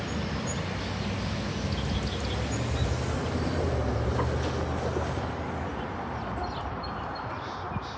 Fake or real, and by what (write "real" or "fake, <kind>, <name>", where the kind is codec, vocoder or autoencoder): real